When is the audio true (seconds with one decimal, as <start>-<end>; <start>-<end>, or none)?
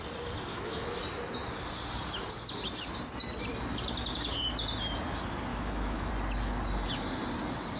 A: 0.0-0.5; 1.0-5.5; 6.1-7.8